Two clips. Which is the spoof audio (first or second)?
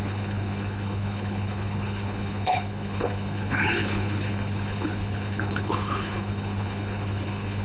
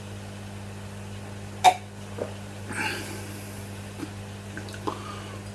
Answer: first